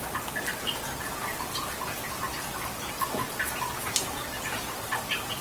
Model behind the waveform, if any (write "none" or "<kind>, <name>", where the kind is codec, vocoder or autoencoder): none